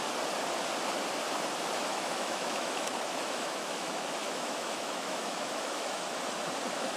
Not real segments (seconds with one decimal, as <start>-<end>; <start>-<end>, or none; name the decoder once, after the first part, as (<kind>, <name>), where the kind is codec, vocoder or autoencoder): 1.9-6.1 (autoencoder, DAC-VAE)